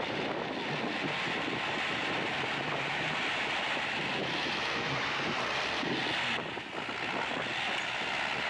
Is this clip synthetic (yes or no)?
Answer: no